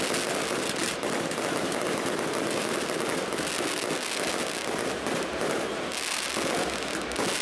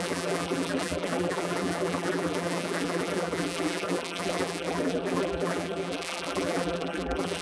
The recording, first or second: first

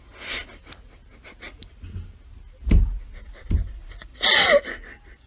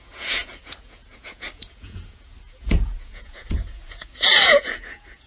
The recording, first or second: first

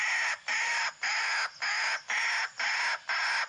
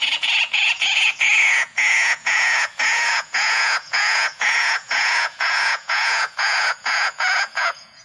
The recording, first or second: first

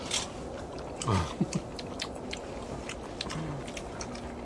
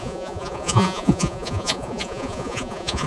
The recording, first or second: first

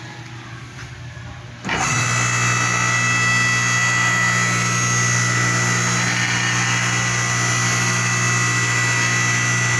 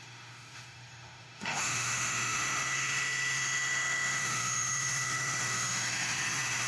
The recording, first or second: first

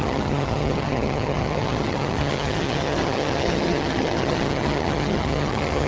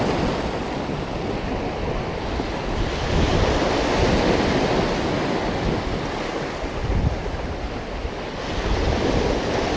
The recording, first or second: second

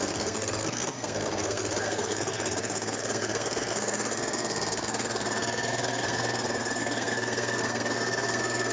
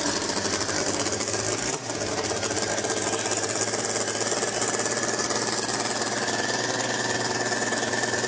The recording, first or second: second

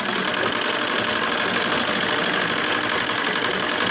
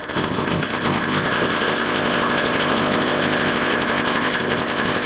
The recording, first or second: first